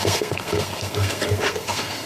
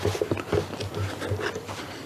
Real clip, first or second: second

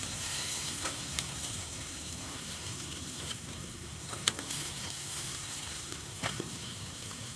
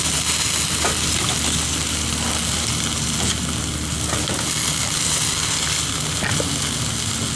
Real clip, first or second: second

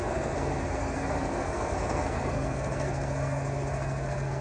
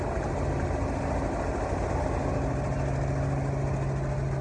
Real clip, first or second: second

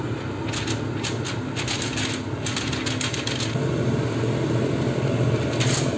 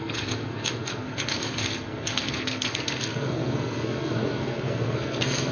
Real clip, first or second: first